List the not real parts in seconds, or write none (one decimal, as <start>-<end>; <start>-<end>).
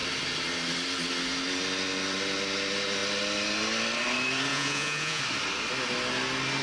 4.5-5.2